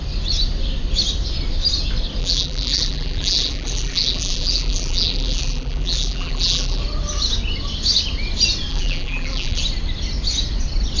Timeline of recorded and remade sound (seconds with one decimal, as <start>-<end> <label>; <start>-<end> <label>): 0.0-2.2 recorded; 2.2-6.8 remade; 6.8-8.7 recorded; 8.7-9.6 remade; 9.6-11.0 recorded